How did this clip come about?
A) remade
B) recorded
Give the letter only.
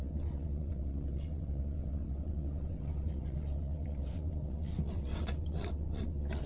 A